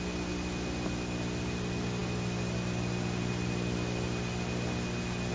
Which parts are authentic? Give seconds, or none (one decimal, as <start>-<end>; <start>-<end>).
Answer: 0.0-5.3